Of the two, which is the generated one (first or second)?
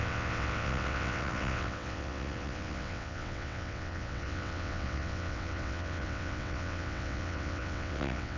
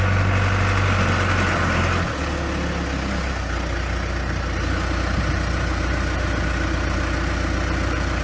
first